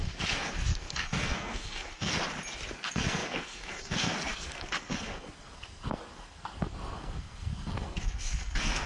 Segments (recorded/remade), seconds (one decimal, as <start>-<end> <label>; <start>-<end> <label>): 0.0-2.2 remade; 2.2-2.7 recorded; 2.7-8.9 remade